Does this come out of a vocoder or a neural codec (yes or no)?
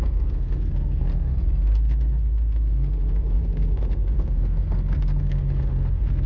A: yes